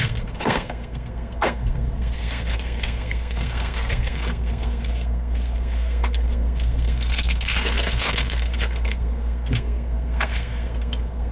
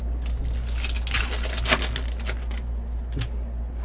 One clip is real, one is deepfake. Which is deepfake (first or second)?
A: first